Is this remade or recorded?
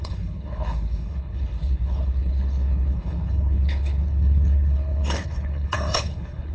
remade